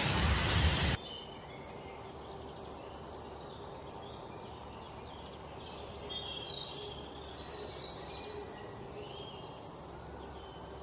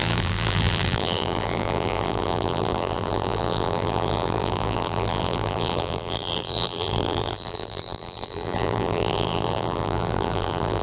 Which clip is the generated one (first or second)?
second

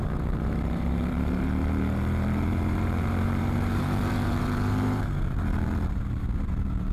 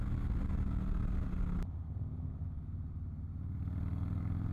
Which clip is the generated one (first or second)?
first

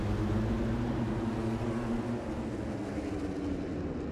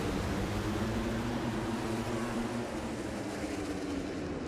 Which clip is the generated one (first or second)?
second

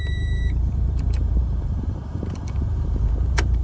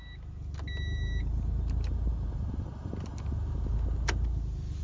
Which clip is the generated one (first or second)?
first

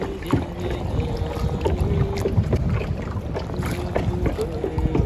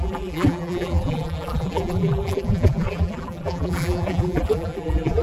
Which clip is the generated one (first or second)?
second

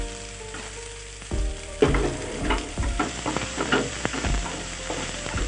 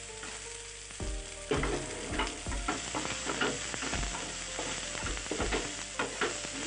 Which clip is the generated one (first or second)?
first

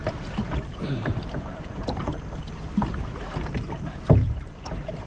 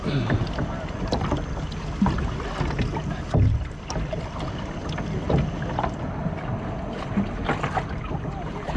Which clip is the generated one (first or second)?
first